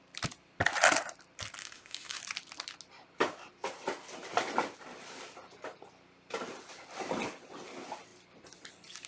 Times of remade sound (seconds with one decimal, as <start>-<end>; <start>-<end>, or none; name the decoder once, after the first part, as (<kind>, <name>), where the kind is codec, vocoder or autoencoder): 1.6-2.2 (autoencoder, DAC-VAE)